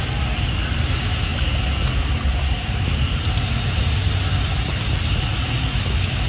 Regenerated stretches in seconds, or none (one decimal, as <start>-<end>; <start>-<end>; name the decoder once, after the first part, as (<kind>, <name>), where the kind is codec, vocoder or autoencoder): none